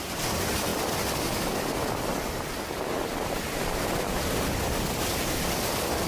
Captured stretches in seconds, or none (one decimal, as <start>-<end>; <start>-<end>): 0.0-6.1